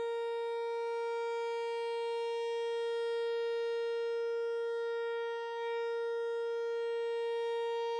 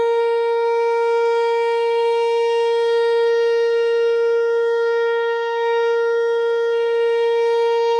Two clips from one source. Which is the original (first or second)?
first